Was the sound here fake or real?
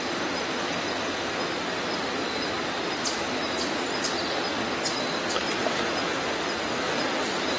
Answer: real